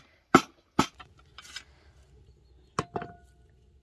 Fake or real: real